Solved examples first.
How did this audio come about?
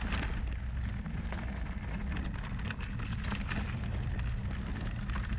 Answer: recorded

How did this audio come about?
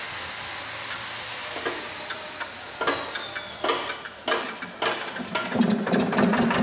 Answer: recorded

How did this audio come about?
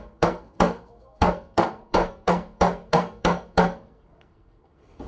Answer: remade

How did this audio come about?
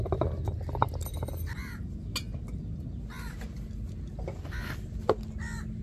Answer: recorded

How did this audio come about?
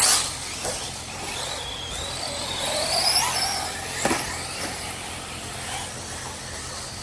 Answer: recorded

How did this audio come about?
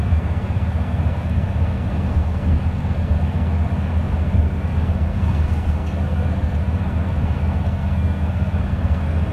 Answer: remade